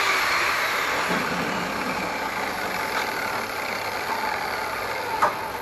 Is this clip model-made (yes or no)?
no